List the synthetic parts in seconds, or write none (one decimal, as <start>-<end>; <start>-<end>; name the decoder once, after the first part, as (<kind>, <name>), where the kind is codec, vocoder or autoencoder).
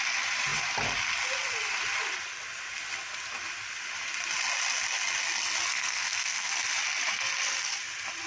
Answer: 5.7-6.5 (codec, SNAC)